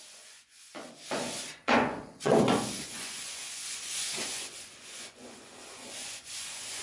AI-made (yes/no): yes